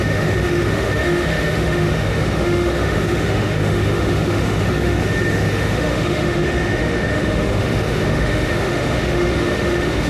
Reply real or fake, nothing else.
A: fake